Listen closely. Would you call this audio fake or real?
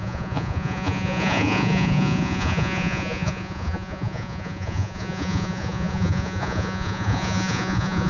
fake